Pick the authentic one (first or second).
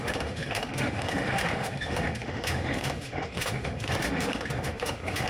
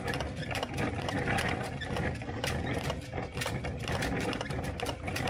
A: second